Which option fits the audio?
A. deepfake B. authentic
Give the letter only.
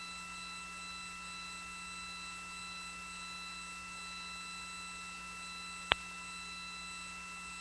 B